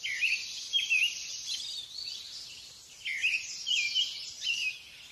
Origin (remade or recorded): recorded